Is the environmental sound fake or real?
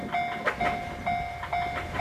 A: real